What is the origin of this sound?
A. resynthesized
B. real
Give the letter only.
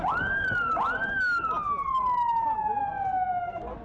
B